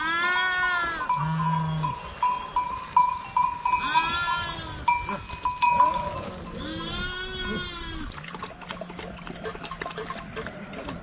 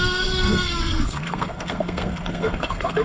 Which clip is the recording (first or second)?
first